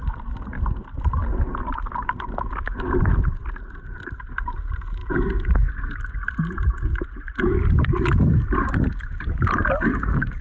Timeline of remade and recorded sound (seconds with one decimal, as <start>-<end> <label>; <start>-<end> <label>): 0.0-10.4 recorded